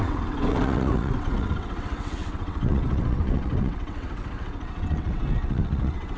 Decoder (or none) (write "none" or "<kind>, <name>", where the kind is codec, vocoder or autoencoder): vocoder, WaveNeXt